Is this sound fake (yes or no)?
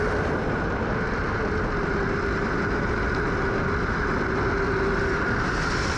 no